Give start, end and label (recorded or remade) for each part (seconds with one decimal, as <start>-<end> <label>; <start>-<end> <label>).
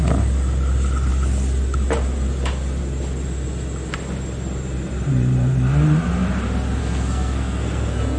0.0-6.8 recorded; 6.8-8.2 remade